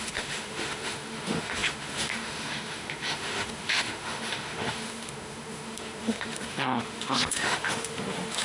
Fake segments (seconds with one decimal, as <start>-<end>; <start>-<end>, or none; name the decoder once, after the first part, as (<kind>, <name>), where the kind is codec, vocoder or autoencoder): 0.0-8.4 (autoencoder, DAC-VAE)